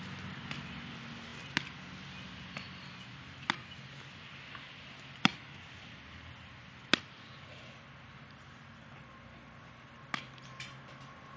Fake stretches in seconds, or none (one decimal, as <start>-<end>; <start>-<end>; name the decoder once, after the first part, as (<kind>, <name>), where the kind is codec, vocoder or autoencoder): none

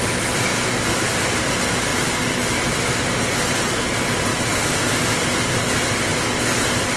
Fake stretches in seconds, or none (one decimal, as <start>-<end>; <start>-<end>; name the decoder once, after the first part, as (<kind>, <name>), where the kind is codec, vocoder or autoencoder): 1.9-2.7 (vocoder, BigVGAN v2)